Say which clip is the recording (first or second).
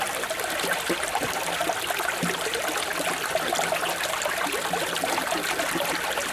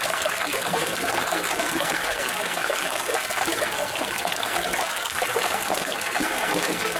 first